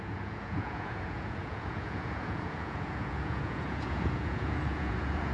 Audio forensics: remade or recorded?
remade